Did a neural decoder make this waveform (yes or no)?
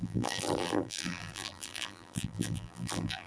yes